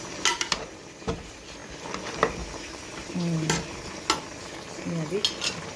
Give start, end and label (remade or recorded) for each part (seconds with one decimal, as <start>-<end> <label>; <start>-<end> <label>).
0.0-5.8 recorded